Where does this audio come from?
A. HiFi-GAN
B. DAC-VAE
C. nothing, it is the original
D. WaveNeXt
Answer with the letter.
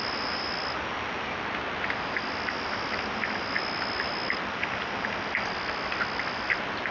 C